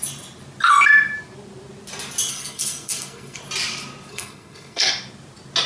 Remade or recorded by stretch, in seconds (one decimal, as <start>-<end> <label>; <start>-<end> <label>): 0.0-2.3 recorded; 2.3-3.4 remade; 3.4-4.1 recorded; 4.1-4.9 remade; 4.9-5.7 recorded